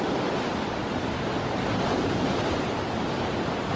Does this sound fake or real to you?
real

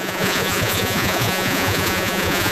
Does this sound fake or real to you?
fake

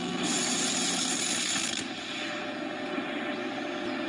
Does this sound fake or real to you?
real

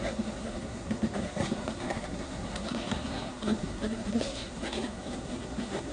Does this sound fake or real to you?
fake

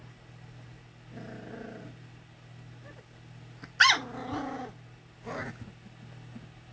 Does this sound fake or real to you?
real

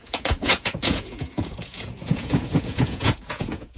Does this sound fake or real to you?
fake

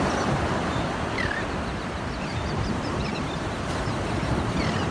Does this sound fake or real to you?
fake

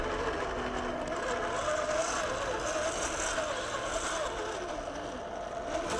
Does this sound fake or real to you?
real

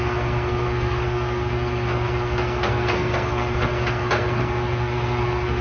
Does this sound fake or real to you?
fake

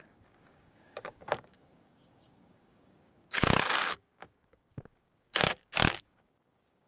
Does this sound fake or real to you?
fake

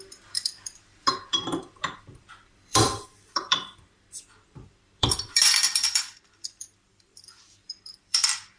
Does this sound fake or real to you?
fake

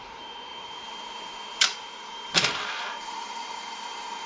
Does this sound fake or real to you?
fake